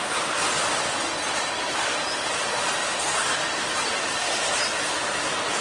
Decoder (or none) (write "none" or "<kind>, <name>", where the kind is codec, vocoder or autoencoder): none